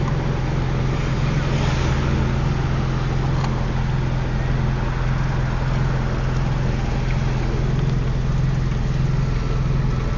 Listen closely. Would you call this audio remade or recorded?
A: recorded